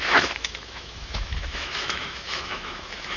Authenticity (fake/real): fake